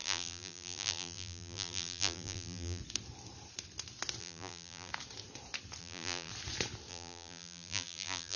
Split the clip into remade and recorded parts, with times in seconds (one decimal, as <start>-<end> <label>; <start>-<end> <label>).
0.0-2.8 remade; 2.8-4.2 recorded; 4.2-4.9 remade; 4.9-5.8 recorded; 5.8-6.3 remade; 6.3-6.9 recorded; 6.9-8.4 remade